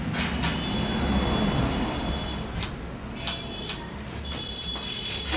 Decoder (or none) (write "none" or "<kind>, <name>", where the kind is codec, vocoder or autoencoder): none